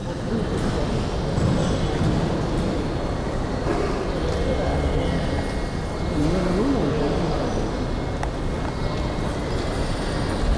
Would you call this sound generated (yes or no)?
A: no